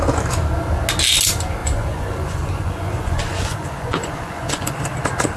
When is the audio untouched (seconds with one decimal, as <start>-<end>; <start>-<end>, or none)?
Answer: 0.0-1.6; 4.8-5.4

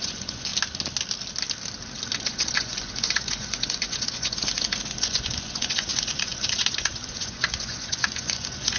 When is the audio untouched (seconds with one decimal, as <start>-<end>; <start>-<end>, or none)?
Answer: 0.5-2.2

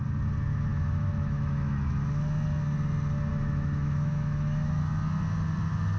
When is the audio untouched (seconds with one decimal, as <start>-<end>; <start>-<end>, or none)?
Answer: 0.0-0.7; 1.8-3.3; 4.8-6.0

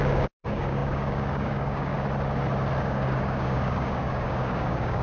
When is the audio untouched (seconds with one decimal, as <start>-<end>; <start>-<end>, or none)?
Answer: 1.9-2.8

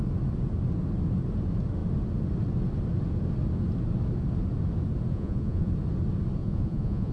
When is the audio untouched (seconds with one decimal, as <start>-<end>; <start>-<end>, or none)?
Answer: 0.0-5.1; 5.7-6.4

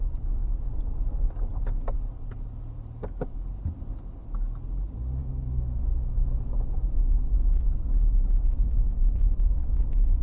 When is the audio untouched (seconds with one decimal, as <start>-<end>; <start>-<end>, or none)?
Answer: 0.0-5.2; 6.5-9.3